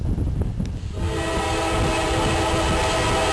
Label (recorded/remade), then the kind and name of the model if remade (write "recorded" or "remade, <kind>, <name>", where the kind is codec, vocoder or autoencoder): recorded